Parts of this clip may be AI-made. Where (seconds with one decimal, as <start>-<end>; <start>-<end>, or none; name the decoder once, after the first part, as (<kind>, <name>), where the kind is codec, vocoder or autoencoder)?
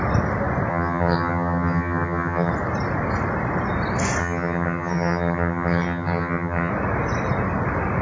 0.7-2.5 (vocoder, HiFi-GAN); 4.2-6.7